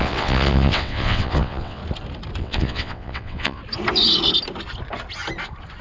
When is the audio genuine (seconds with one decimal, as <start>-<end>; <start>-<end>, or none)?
1.8-2.4; 3.6-5.8